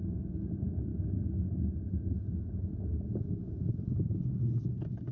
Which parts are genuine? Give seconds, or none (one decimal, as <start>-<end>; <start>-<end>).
0.0-0.9; 1.7-5.1